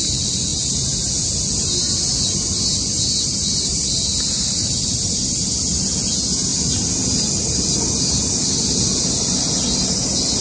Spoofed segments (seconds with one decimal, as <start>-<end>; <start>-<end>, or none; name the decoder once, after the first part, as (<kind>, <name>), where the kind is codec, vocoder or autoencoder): none